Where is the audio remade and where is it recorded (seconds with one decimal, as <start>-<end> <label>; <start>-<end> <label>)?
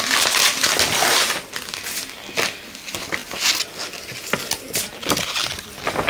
0.0-6.1 recorded